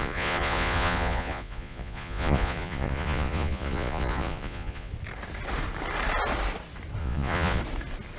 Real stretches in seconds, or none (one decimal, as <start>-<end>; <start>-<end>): 4.9-7.0; 7.6-8.2